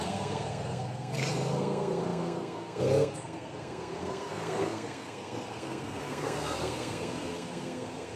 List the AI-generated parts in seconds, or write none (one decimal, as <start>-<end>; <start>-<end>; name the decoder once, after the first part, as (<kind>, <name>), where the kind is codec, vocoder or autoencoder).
0.0-8.2 (codec, SNAC)